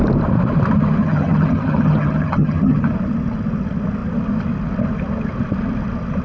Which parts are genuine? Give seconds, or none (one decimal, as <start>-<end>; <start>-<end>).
0.0-1.0; 2.9-6.2